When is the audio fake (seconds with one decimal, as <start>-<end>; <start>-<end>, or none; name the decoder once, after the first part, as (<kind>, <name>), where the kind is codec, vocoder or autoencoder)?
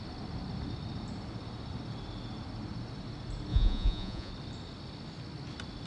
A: 3.5-4.3 (vocoder, Vocos)